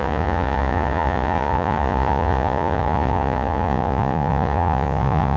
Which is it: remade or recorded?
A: remade